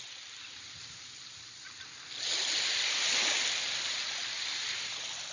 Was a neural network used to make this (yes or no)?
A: no